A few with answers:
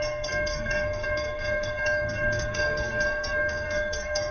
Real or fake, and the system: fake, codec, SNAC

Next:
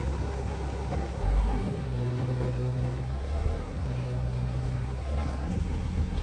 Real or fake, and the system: fake, codec, SNAC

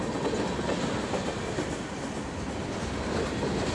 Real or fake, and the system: real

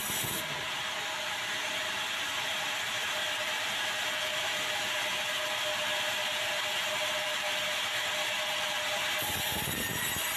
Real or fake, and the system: real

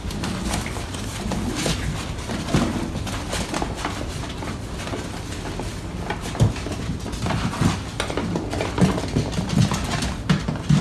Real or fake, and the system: real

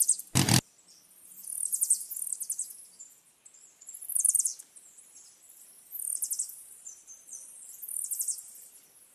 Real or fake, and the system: real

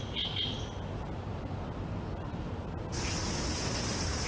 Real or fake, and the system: real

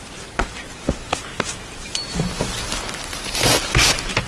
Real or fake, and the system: real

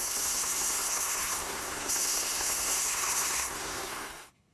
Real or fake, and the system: fake, codec, SNAC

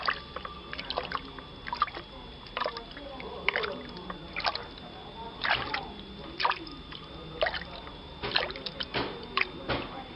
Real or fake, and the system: real